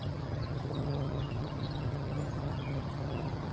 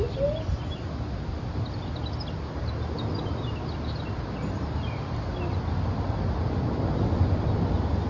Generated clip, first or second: first